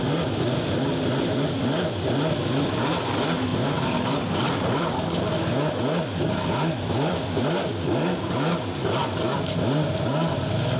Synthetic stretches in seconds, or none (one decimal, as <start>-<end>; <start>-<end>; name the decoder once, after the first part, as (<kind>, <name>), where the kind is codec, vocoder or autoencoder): none